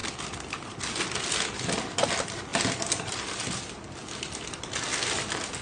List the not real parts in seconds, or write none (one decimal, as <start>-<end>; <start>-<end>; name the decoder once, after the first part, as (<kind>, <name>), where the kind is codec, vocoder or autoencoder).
none